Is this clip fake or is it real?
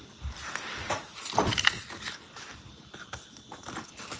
real